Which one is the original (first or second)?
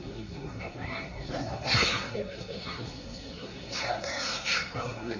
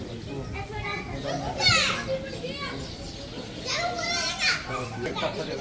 second